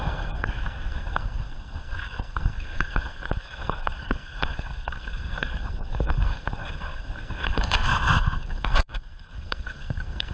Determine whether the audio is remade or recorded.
remade